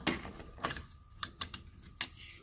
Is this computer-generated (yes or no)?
no